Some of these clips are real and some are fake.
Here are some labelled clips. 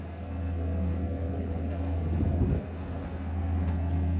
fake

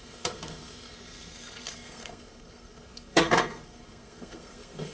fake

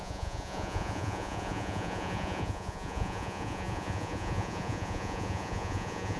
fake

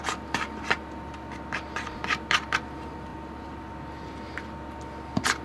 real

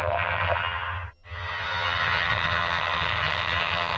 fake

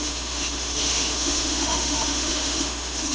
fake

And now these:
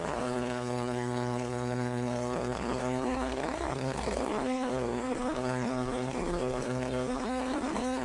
fake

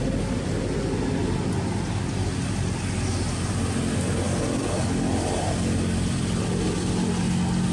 real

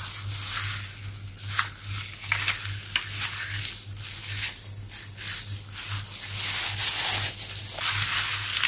real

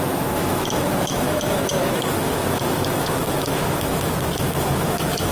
fake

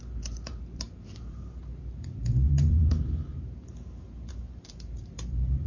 fake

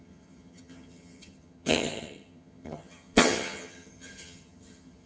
fake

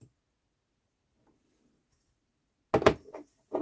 real